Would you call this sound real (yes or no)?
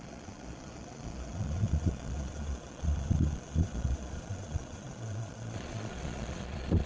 no